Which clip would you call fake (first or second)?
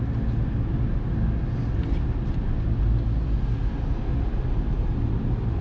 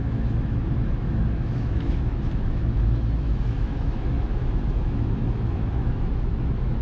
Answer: second